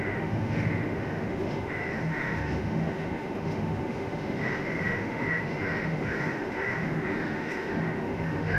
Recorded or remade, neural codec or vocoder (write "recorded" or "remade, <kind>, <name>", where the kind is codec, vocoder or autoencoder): remade, autoencoder, DAC-VAE